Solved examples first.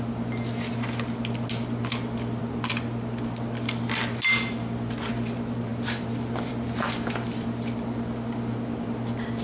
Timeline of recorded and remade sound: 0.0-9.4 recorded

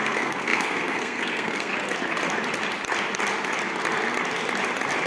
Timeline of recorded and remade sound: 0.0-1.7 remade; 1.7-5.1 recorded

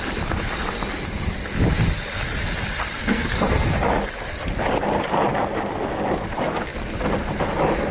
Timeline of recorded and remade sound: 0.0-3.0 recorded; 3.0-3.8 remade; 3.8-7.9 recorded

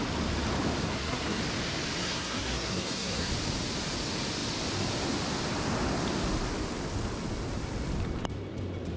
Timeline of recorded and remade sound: 0.0-0.8 recorded; 0.8-1.4 remade; 1.4-2.0 recorded; 2.0-3.3 remade; 3.3-9.0 recorded

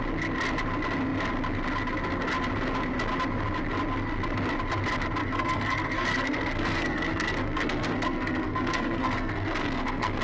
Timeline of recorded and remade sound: 0.0-5.2 recorded; 5.2-10.2 remade